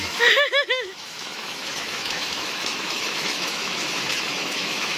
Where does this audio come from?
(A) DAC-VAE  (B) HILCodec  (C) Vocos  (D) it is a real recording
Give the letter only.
A